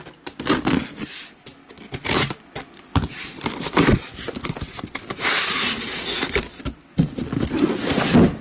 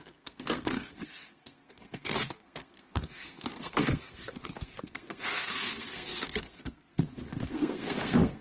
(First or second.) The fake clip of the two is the second